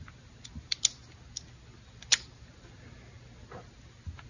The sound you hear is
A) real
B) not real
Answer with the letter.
A